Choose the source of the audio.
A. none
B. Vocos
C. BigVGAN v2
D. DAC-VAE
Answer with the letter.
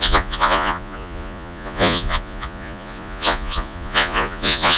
B